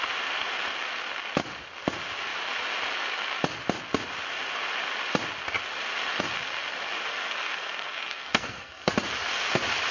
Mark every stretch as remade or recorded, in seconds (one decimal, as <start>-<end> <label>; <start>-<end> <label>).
0.0-7.1 recorded; 7.1-8.9 remade; 8.9-9.9 recorded